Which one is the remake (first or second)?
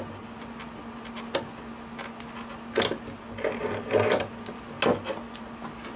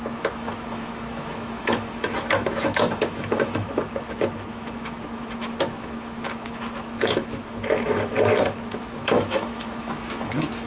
second